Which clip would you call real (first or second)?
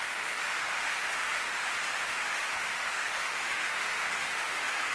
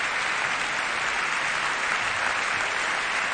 second